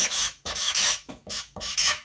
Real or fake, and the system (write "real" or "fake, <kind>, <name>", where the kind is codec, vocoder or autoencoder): fake, autoencoder, DAC-VAE